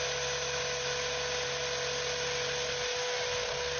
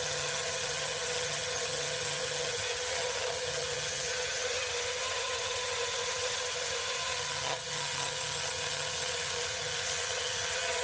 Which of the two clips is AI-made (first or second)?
second